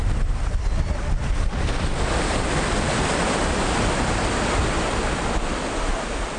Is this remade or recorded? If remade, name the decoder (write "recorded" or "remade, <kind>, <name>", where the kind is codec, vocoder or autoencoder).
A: remade, vocoder, BigVGAN v2